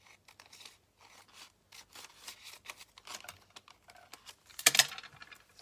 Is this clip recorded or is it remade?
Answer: recorded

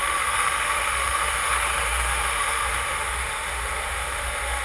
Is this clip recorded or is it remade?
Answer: remade